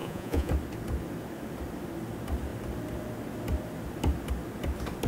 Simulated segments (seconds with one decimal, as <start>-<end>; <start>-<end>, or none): 0.0-0.5